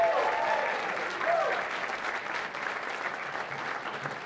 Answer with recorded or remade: recorded